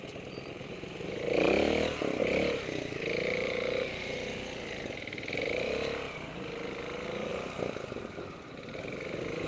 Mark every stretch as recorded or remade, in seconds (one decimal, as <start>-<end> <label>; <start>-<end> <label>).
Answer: 0.0-0.6 recorded; 0.6-1.2 remade; 1.2-9.5 recorded